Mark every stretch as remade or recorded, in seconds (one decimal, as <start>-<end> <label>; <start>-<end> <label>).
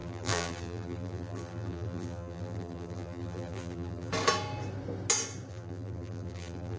0.0-4.1 remade; 4.1-5.5 recorded; 5.5-6.8 remade